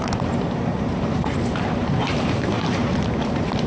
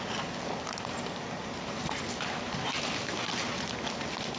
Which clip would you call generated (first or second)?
first